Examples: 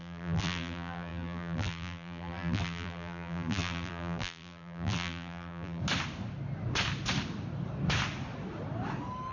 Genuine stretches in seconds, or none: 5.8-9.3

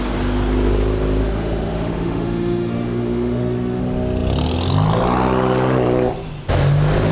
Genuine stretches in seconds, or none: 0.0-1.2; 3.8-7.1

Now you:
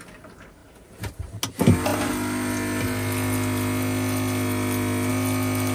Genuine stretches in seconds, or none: 0.0-5.7